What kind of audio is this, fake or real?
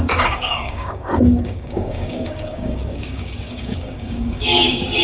fake